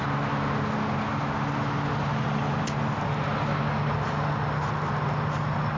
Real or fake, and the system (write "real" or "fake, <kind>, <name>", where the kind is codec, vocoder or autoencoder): real